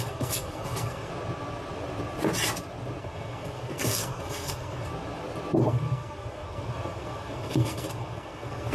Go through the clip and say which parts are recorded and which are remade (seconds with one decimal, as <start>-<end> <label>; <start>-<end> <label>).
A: 0.0-1.1 remade; 1.1-3.0 recorded; 3.0-4.9 remade; 4.9-5.6 recorded; 5.6-8.7 remade